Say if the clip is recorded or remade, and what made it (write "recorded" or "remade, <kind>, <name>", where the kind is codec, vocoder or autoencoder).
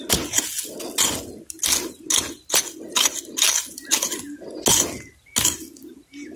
recorded